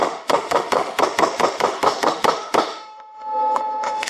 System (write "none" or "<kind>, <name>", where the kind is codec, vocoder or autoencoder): autoencoder, DAC-VAE